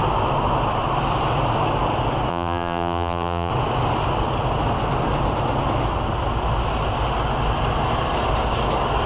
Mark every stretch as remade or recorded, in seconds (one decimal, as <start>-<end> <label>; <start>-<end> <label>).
0.0-2.3 recorded; 2.3-3.5 remade; 3.5-9.1 recorded